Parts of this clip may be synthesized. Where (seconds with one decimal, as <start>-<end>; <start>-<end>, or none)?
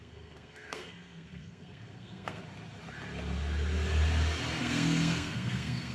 0.0-2.4; 4.6-5.9